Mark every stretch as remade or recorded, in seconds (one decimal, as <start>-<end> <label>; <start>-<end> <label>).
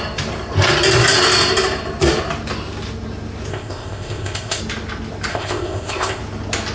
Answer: 0.0-3.5 recorded; 3.5-4.6 remade; 4.6-5.3 recorded; 5.3-6.2 remade; 6.2-6.7 recorded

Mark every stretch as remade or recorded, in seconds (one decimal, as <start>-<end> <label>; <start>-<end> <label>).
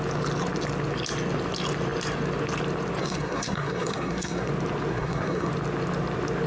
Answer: 0.0-3.0 recorded; 3.0-4.5 remade; 4.5-4.9 recorded; 4.9-5.5 remade; 5.5-6.5 recorded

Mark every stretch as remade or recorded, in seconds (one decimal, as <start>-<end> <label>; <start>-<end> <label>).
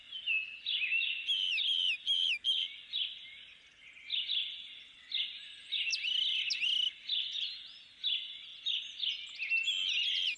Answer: 0.0-10.4 recorded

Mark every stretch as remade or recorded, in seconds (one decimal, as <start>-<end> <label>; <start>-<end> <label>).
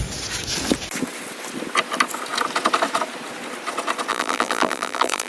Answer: 0.0-4.1 recorded; 4.1-5.3 remade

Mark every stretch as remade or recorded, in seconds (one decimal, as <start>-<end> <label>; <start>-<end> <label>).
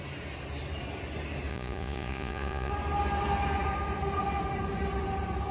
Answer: 0.0-1.5 recorded; 1.5-2.7 remade; 2.7-5.5 recorded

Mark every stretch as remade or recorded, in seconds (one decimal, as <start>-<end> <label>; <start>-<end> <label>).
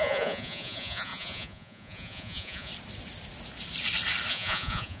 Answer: 0.0-2.7 remade; 2.7-4.3 recorded; 4.3-5.0 remade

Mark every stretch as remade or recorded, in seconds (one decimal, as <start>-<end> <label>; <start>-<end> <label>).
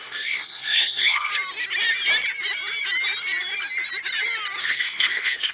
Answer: 0.0-1.3 remade; 1.3-4.6 recorded; 4.6-5.5 remade